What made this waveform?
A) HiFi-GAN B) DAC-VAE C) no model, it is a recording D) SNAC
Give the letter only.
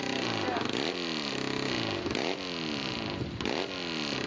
C